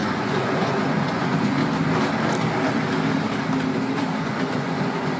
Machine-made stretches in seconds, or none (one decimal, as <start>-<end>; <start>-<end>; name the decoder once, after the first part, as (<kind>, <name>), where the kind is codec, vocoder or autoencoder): 0.0-1.6 (vocoder, Vocos); 4.2-5.2